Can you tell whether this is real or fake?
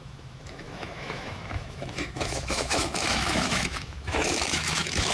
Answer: fake